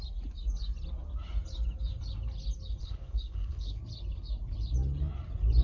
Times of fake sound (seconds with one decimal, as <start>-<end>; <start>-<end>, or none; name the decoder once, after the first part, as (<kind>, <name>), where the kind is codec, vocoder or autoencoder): 2.8-3.8 (codec, HILCodec)